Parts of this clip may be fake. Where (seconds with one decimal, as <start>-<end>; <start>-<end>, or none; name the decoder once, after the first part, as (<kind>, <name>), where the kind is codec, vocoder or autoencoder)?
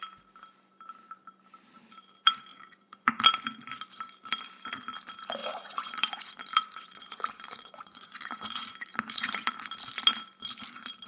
2.5-3.2 (vocoder, Vocos); 5.4-9.5